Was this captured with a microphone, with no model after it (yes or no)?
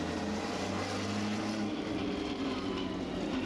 yes